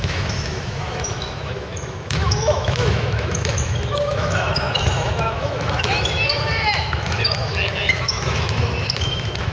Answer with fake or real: fake